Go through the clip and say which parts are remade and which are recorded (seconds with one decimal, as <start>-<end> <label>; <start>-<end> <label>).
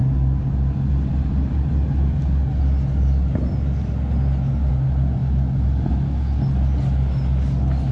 0.0-7.9 recorded